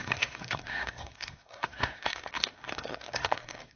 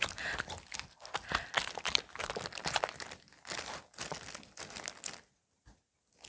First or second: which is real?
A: second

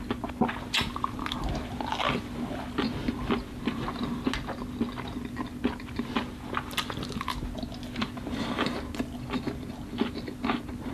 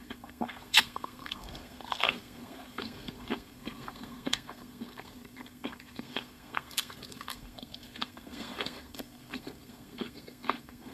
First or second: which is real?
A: first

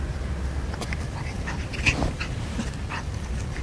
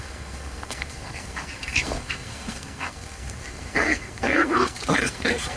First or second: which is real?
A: first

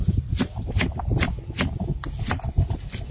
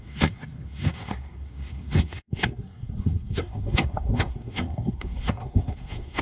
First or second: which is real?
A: first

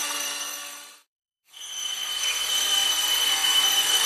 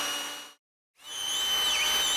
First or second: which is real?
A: second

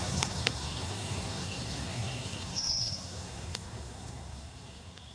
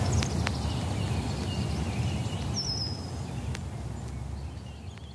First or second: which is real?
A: second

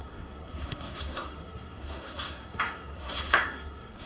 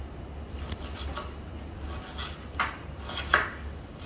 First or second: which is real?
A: second